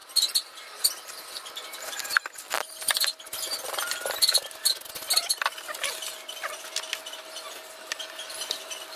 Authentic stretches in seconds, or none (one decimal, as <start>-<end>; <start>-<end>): 0.0-9.0